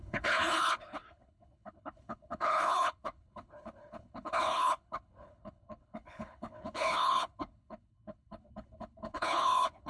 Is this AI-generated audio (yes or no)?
yes